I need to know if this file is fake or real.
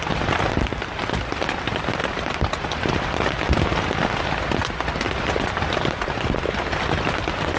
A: real